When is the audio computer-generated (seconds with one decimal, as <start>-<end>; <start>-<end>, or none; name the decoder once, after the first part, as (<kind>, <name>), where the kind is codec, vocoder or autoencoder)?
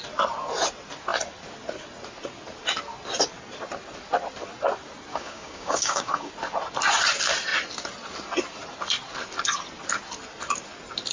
5.1-6.3 (codec, DAC)